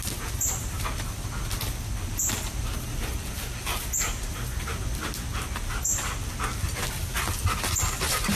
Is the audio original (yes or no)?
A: yes